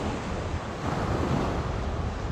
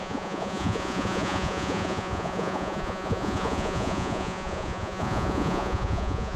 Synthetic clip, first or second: second